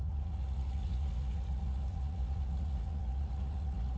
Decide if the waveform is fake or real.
fake